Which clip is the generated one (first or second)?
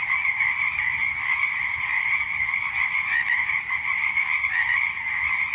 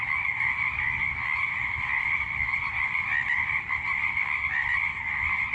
first